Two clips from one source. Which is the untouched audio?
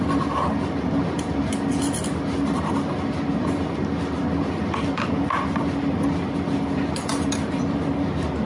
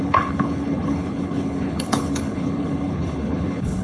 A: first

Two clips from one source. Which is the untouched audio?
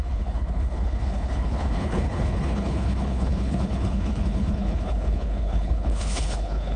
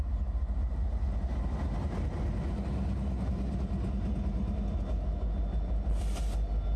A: second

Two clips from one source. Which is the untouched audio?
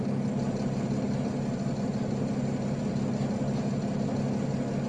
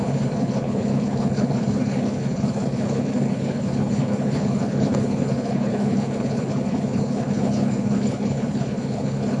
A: first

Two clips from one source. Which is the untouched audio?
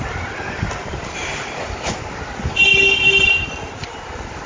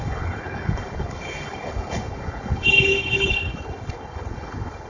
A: first